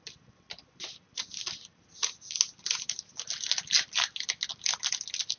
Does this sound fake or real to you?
real